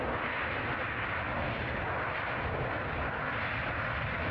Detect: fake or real real